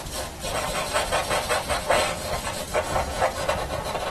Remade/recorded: recorded